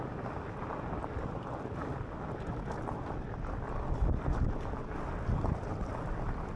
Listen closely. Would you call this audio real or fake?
real